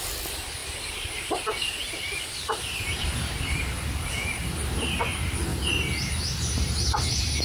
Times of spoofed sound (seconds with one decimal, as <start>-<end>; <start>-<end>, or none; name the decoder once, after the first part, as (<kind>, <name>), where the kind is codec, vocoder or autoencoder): 0.6-5.0 (vocoder, BigVGAN v2); 5.5-7.4